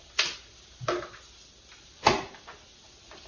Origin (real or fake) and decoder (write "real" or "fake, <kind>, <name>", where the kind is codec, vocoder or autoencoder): real